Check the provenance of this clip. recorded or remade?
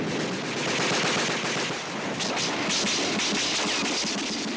recorded